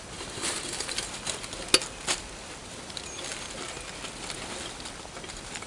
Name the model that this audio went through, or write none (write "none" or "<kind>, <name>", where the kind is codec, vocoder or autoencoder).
none